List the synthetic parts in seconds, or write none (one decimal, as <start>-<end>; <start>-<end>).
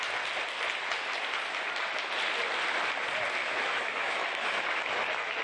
3.4-5.4